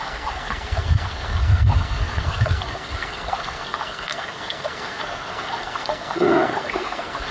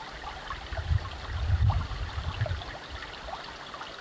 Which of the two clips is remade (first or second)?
first